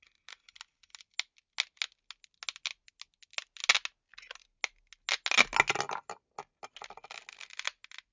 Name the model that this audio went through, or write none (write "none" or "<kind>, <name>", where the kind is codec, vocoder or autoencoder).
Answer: none